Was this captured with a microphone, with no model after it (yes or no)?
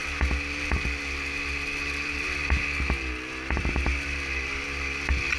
yes